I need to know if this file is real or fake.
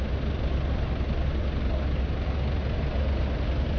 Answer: real